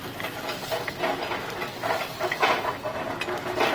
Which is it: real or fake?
real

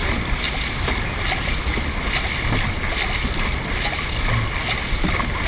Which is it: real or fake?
real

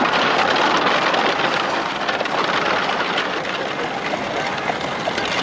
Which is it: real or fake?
real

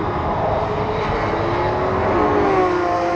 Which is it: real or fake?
real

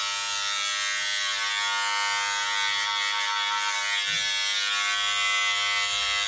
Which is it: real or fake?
real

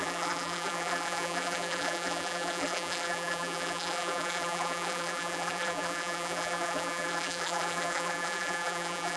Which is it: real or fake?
fake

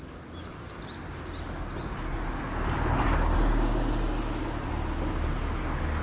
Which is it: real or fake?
real